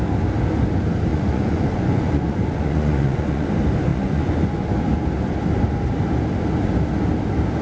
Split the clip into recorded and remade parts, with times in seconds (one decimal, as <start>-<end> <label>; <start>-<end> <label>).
0.0-1.1 recorded; 1.1-3.5 remade; 3.5-3.9 recorded; 3.9-4.7 remade; 4.7-7.6 recorded